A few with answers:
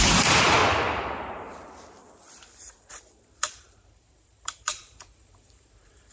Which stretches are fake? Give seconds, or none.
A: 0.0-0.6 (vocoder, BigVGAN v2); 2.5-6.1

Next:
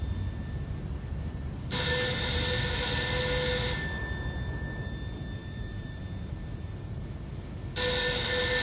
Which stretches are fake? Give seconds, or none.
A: 5.4-6.0 (vocoder, BigVGAN v2)

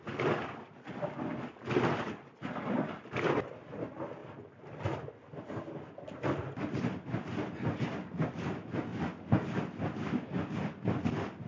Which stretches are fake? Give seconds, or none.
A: none